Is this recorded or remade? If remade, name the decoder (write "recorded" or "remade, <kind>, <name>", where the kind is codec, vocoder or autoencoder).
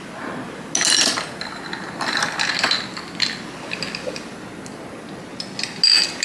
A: recorded